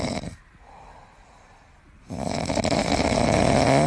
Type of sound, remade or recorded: recorded